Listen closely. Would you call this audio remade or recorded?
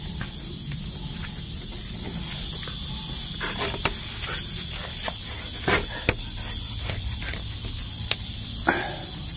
recorded